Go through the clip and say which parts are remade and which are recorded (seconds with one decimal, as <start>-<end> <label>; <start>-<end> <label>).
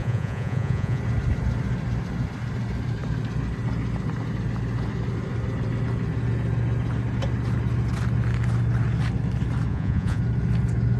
0.0-1.0 remade; 1.0-9.7 recorded; 9.7-10.2 remade; 10.2-11.0 recorded